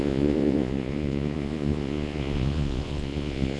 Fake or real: fake